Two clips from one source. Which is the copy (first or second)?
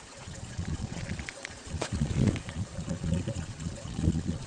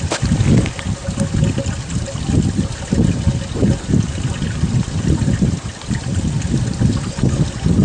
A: first